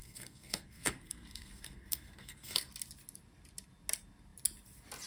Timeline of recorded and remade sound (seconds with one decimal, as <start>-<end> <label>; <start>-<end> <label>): 0.0-2.7 remade; 2.7-5.1 recorded